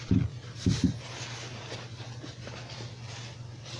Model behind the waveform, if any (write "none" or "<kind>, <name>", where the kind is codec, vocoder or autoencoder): none